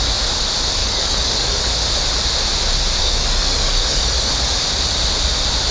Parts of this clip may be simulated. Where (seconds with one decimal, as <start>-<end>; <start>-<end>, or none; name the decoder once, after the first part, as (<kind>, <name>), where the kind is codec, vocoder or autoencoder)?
0.8-1.7 (codec, DAC); 3.0-4.3